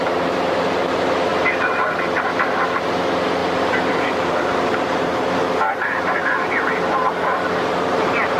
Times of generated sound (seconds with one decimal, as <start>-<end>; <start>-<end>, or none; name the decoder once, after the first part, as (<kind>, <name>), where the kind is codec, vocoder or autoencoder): 0.0-1.3 (vocoder, BigVGAN v2); 1.9-8.4